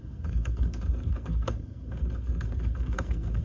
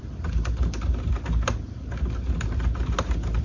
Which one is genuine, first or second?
second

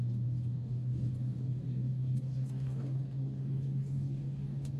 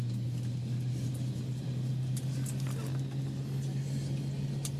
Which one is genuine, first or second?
second